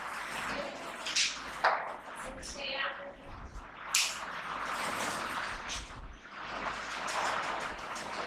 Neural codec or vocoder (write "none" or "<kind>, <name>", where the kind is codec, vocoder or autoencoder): none